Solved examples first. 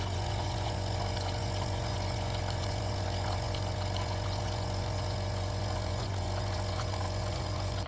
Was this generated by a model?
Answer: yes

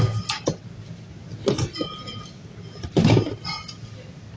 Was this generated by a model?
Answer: no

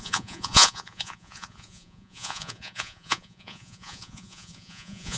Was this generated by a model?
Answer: yes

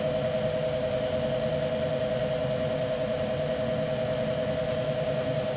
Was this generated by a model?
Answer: no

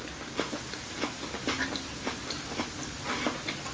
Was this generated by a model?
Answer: no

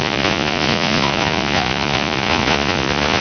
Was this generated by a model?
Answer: yes